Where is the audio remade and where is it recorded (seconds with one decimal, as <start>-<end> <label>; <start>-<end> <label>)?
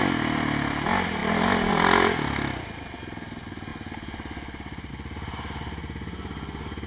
0.0-6.9 recorded